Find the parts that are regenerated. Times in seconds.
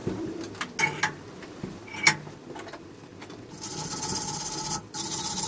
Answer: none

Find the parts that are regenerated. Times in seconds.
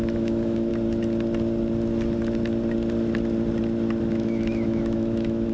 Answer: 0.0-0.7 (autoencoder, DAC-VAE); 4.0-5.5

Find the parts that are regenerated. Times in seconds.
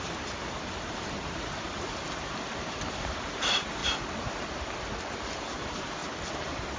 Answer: 0.0-3.8 (vocoder, BigVGAN v2); 5.4-6.0